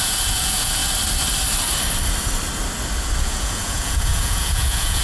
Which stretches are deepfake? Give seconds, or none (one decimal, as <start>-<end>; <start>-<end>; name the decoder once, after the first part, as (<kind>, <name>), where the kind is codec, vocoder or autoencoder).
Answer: 0.0-0.8 (vocoder, Vocos); 3.2-5.0